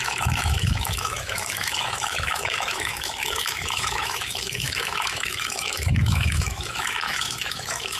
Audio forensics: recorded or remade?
remade